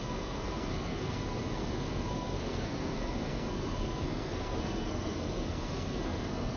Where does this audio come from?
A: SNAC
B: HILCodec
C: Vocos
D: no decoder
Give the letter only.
A